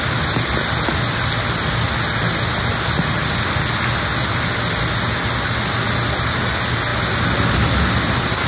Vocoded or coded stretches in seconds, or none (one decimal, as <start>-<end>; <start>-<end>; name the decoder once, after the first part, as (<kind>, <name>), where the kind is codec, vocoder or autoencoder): none